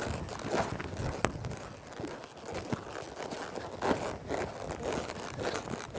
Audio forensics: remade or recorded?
recorded